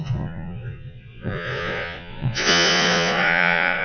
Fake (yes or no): yes